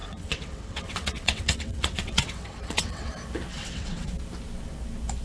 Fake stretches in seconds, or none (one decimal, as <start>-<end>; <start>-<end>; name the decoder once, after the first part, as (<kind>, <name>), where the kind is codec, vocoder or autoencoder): 0.0-3.1 (vocoder, WaveNeXt); 3.5-4.1